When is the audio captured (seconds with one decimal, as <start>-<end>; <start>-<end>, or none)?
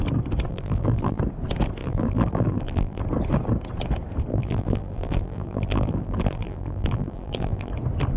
0.0-0.5; 1.2-1.8; 3.0-4.3; 7.7-8.2